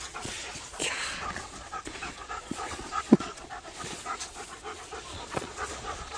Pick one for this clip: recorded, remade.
remade